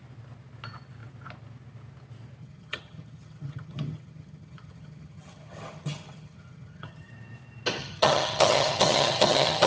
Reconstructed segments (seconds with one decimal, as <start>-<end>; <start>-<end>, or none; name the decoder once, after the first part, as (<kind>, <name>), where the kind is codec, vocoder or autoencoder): 2.4-7.1 (vocoder, HiFi-GAN); 7.8-9.7